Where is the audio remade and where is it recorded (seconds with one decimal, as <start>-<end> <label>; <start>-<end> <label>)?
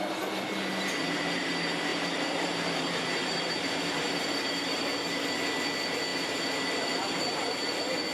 0.0-1.0 recorded; 1.0-1.5 remade; 1.5-1.9 recorded; 1.9-4.8 remade; 4.8-8.1 recorded